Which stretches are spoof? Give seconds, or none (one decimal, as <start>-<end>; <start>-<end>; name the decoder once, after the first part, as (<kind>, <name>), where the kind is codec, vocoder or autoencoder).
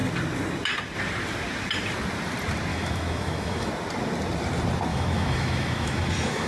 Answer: 2.7-3.7 (autoencoder, DAC-VAE); 4.9-6.5